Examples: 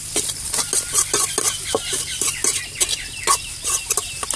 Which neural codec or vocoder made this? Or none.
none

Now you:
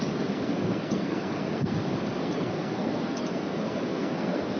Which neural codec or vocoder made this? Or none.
codec, SNAC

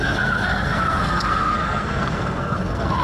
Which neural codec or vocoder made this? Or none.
codec, SNAC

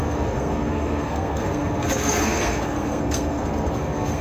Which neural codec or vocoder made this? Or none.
codec, SNAC